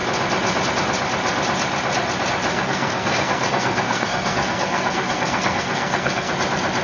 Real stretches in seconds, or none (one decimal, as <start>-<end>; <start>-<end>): 0.0-2.5; 6.3-6.8